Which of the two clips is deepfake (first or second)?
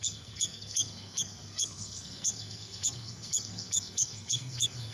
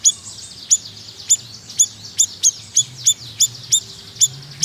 first